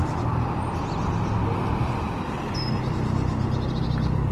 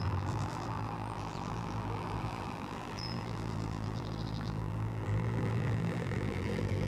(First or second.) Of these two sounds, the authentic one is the first